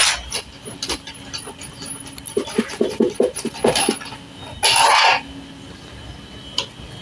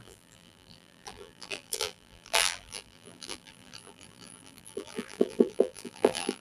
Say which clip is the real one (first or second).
first